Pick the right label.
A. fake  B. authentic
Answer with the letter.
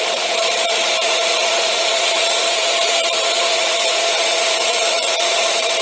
A